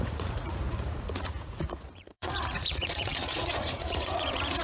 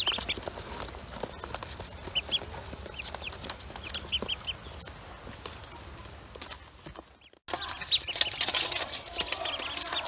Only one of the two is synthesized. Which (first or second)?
first